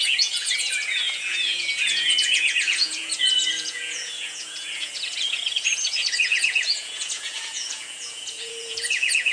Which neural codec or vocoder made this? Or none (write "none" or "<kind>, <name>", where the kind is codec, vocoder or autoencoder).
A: vocoder, Vocos